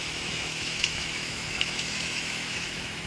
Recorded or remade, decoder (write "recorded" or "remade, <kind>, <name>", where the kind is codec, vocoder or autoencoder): remade, autoencoder, DAC-VAE